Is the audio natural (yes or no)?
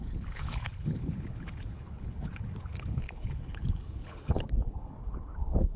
no